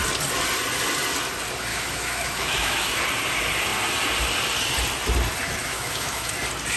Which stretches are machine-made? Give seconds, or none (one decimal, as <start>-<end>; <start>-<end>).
1.7-3.0; 5.6-6.3